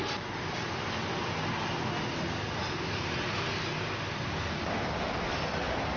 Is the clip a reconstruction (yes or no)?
no